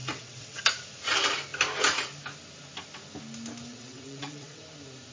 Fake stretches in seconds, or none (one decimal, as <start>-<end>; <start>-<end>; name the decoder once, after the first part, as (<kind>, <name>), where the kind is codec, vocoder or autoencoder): 0.0-0.6 (vocoder, WaveNeXt); 3.7-4.6